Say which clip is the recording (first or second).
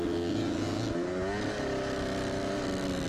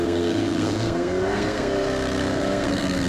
first